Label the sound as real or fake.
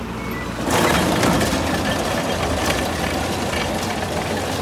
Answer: real